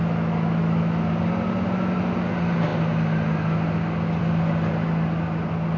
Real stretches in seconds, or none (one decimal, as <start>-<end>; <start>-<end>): 1.0-5.8

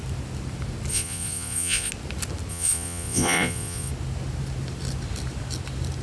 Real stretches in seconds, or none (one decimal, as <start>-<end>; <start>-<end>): 0.0-0.9; 1.9-2.5; 3.9-6.0

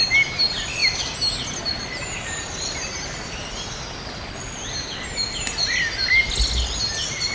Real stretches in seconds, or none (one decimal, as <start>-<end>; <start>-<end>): 0.0-7.3

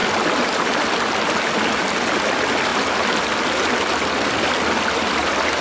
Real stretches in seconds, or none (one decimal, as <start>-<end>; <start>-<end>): 0.0-5.6

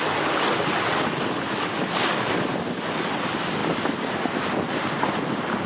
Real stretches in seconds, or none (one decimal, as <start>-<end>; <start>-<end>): 0.0-5.7

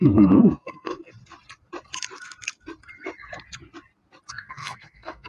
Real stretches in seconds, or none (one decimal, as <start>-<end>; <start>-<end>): 1.1-4.3

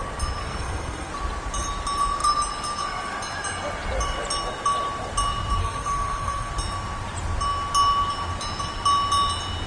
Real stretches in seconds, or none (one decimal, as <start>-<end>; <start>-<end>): 0.0-0.4; 1.1-5.6; 6.5-9.7

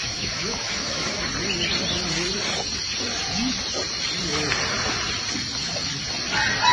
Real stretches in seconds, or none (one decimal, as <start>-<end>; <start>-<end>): 1.2-6.7